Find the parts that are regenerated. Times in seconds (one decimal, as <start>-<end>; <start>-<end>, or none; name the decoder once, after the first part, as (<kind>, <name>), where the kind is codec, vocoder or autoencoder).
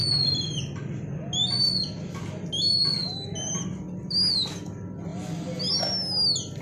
none